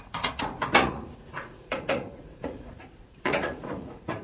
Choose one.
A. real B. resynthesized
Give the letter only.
B